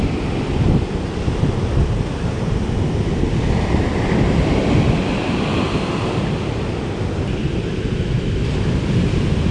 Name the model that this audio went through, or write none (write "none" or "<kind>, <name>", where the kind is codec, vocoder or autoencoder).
none